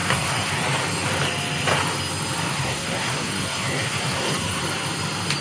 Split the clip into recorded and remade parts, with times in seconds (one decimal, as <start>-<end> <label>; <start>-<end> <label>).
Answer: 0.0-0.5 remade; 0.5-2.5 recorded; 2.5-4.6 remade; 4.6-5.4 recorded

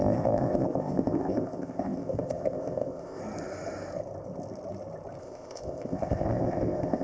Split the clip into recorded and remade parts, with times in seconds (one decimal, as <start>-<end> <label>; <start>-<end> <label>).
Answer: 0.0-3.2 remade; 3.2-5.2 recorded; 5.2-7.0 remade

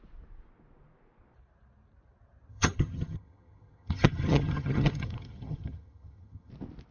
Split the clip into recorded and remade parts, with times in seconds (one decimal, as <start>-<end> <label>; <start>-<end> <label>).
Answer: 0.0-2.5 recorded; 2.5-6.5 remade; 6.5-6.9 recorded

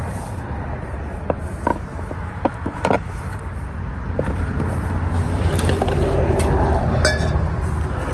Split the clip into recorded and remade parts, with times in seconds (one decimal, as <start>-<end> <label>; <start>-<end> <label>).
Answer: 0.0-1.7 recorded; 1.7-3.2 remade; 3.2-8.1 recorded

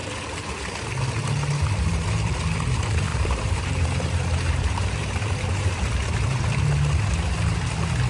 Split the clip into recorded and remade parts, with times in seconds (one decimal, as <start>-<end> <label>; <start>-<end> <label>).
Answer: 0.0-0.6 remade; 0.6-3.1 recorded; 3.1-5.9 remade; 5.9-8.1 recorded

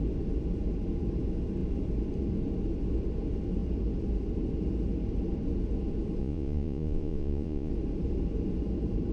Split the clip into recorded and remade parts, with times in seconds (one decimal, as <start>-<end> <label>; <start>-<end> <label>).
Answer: 0.0-6.2 recorded; 6.2-7.7 remade; 7.7-9.1 recorded

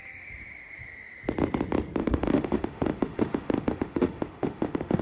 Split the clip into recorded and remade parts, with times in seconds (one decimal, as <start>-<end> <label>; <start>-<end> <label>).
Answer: 0.0-2.0 recorded; 2.0-5.0 remade

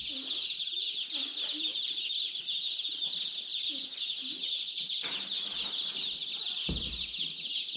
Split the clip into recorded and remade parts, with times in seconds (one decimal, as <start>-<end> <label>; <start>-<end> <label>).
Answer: 0.0-6.2 recorded; 6.2-7.2 remade; 7.2-7.8 recorded